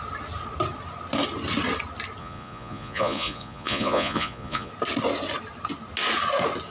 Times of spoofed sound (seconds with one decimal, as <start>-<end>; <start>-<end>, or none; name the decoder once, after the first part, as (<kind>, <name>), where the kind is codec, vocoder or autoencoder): 2.2-4.7 (vocoder, Vocos)